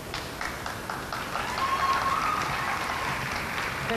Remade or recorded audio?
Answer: recorded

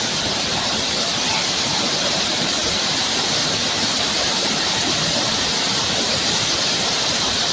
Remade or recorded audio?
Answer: remade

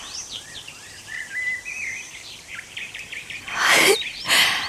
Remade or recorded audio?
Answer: remade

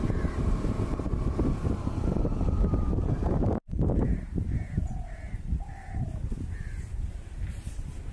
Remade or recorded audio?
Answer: remade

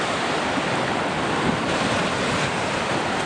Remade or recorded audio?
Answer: remade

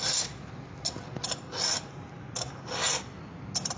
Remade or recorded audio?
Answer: recorded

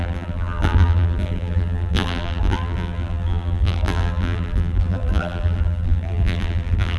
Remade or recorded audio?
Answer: remade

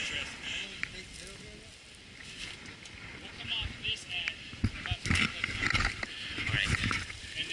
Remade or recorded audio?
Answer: recorded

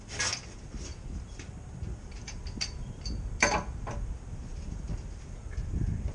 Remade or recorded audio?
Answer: remade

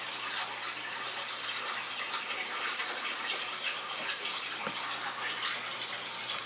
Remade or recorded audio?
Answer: remade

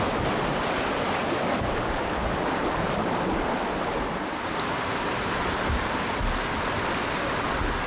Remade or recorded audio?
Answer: recorded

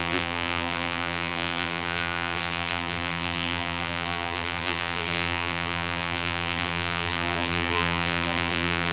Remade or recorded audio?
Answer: remade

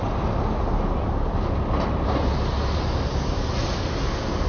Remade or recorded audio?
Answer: recorded